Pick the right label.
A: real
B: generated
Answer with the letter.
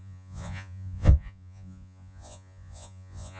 B